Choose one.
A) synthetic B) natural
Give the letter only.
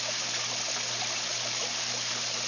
B